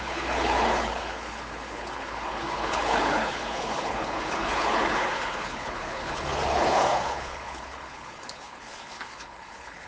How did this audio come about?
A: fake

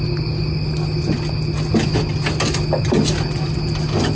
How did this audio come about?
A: real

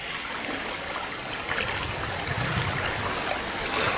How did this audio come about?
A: real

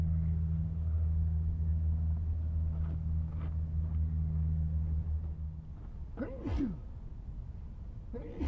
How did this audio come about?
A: real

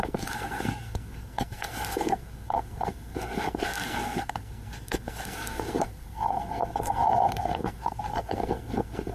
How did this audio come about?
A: fake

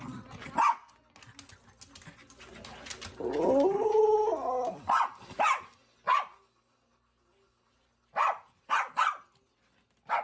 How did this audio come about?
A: real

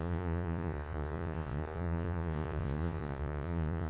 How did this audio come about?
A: fake